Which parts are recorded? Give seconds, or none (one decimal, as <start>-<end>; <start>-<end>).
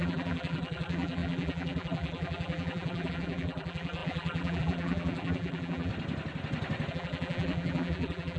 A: 5.9-6.9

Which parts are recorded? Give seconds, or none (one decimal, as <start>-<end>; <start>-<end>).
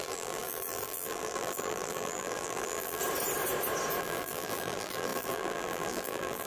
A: 3.0-4.0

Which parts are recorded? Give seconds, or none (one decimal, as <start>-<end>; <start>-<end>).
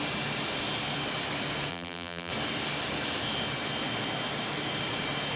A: 0.0-1.7; 2.3-5.4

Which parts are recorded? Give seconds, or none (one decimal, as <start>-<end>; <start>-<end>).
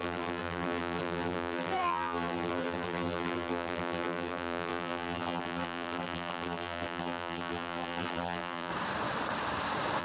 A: 8.7-10.0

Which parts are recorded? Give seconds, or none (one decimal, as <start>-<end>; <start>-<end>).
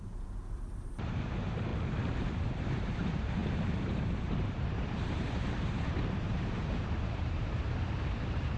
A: 1.7-2.3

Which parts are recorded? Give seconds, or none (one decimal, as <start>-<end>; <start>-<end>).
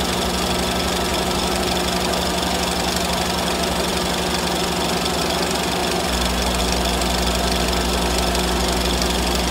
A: 0.0-1.1; 1.6-9.5